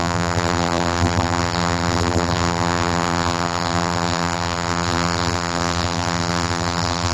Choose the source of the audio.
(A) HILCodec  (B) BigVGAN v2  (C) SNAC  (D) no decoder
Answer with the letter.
B